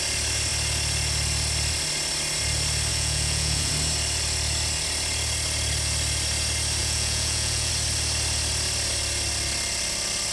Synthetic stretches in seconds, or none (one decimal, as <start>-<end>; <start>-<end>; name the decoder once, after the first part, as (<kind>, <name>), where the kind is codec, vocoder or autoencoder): 2.9-3.7 (vocoder, Vocos); 6.8-7.7